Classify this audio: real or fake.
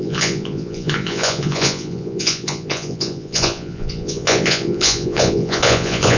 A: fake